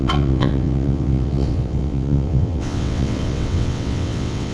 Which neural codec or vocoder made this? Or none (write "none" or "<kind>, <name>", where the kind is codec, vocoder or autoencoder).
vocoder, WaveNeXt